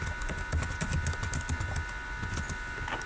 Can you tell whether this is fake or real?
real